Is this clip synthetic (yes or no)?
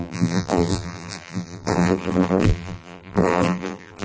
yes